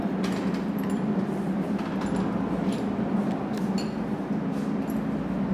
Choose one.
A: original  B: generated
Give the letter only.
A